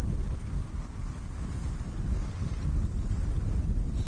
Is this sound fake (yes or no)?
no